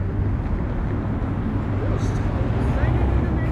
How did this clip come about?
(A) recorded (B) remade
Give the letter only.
A